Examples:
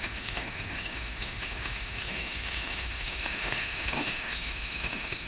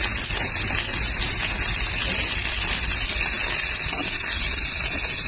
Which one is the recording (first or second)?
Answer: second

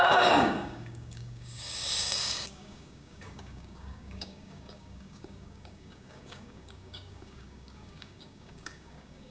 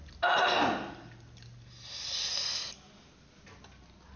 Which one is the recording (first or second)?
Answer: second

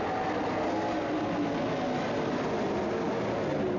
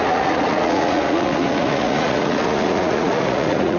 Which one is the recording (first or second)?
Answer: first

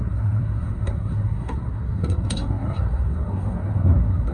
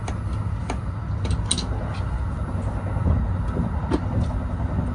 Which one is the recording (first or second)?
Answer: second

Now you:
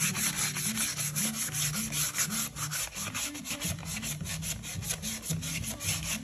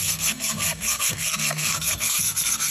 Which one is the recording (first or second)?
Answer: first